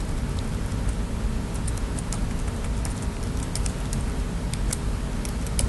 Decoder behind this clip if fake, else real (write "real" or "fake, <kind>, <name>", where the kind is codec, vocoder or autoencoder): real